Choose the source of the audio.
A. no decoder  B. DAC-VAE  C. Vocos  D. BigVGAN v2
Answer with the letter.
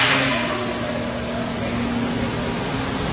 A